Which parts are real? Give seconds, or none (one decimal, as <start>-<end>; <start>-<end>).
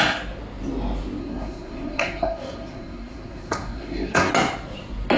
0.0-1.2; 4.3-5.2